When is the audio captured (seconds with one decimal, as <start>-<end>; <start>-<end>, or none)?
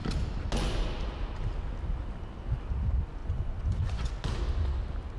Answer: 0.0-3.2; 4.1-5.2